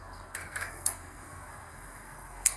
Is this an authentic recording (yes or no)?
no